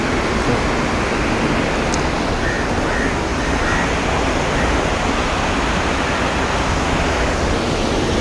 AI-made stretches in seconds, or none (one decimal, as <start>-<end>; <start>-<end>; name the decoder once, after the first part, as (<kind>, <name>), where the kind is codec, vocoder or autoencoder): none